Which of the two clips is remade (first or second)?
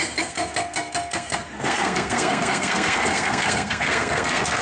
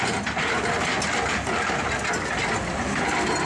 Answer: first